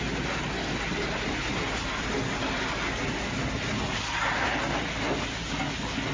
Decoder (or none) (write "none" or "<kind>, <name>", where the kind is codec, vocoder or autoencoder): none